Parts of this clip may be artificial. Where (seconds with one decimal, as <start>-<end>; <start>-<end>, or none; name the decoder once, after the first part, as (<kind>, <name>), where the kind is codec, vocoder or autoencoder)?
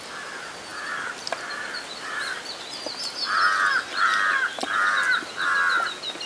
none